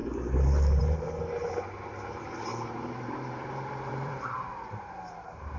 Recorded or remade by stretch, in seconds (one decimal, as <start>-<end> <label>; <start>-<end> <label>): 0.0-2.5 recorded; 2.5-4.3 remade; 4.3-5.6 recorded